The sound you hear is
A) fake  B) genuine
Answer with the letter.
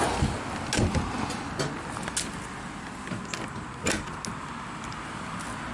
B